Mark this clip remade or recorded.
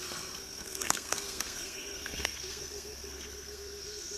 remade